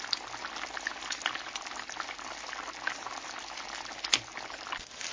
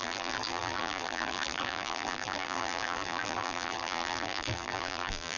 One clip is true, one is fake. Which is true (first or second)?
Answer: first